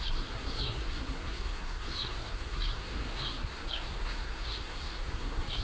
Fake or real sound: fake